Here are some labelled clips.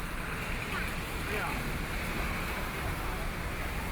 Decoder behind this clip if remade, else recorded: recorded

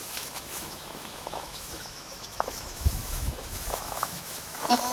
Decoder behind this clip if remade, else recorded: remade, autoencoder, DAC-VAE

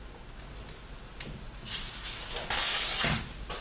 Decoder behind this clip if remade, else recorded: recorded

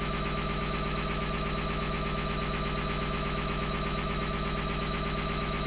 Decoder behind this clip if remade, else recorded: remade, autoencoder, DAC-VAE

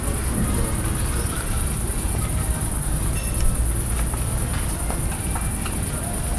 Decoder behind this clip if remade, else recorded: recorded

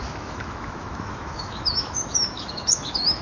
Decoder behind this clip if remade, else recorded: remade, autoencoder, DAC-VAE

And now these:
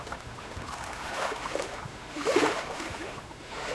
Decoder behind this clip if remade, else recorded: remade, autoencoder, DAC-VAE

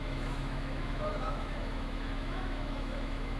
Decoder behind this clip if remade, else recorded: remade, autoencoder, DAC-VAE